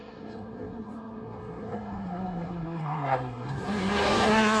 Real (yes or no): no